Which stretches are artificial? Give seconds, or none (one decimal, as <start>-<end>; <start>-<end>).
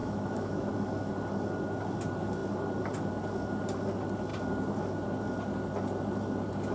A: 0.0-0.7